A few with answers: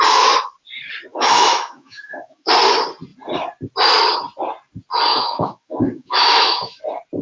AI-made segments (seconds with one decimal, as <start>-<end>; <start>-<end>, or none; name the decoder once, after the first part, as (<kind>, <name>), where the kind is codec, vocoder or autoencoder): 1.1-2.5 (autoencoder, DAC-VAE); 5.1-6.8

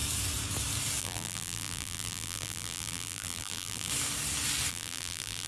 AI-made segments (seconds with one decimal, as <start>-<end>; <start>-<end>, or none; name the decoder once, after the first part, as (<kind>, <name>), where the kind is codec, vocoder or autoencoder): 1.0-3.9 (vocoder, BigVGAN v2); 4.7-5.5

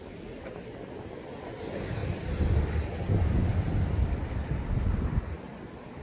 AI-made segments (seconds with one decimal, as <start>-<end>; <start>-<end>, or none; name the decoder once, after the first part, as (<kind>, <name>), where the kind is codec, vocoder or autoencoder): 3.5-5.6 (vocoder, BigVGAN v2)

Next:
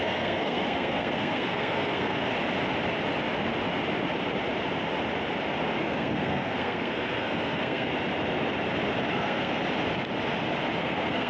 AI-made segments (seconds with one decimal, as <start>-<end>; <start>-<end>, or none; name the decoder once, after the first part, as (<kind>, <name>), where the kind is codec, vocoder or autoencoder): 0.0-2.3 (codec, SNAC); 5.8-7.9; 9.1-9.5; 10.8-11.3

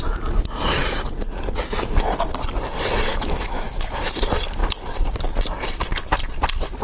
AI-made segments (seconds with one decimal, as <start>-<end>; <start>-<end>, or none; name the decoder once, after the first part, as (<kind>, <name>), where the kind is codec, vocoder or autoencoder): 3.1-4.1 (autoencoder, DAC-VAE)

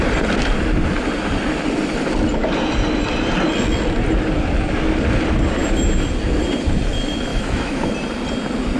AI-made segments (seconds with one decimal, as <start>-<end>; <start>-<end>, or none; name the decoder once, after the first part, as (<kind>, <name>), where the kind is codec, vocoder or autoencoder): 7.3-7.9 (autoencoder, DAC-VAE)